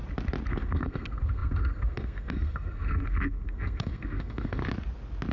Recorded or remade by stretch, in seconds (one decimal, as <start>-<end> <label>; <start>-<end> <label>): 0.0-0.5 recorded; 0.5-4.6 remade; 4.6-5.3 recorded